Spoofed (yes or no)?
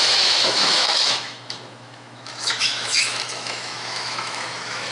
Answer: yes